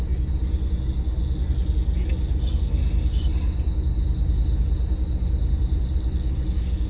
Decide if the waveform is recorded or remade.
recorded